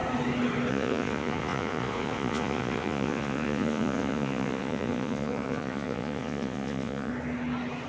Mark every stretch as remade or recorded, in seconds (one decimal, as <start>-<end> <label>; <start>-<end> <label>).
0.0-0.7 recorded; 0.7-7.1 remade; 7.1-7.9 recorded